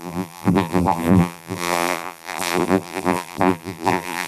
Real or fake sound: fake